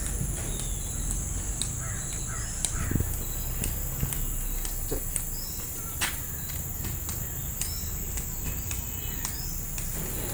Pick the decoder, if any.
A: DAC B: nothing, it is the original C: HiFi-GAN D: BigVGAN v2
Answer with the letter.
B